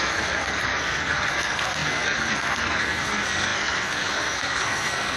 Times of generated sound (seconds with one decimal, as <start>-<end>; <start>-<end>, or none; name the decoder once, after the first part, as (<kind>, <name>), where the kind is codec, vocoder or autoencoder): 0.0-5.2 (codec, SNAC)